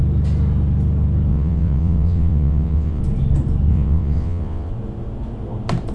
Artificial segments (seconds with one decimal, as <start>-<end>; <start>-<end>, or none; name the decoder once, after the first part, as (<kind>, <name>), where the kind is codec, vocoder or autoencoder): 1.3-3.0 (vocoder, WaveNeXt); 3.7-4.7